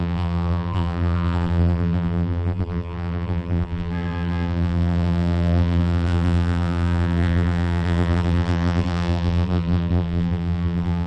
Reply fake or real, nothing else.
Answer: fake